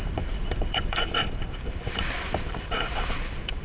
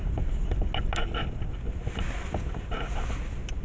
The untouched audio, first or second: second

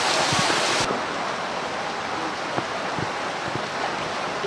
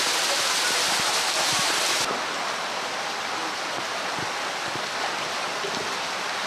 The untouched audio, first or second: first